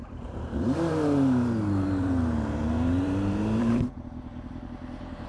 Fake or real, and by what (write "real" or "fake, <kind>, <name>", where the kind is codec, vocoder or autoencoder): fake, vocoder, BigVGAN v2